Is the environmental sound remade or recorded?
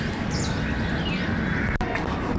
recorded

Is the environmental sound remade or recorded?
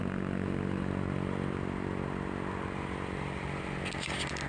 recorded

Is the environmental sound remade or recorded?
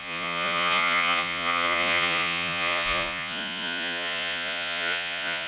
remade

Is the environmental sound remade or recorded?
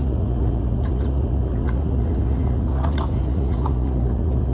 remade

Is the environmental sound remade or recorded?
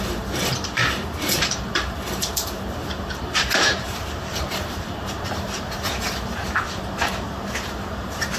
remade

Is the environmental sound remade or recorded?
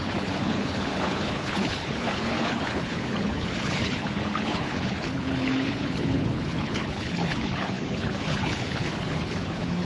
remade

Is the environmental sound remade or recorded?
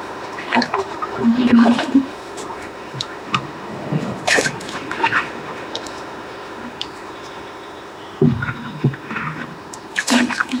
remade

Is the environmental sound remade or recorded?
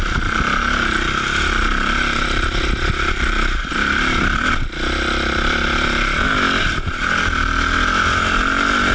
recorded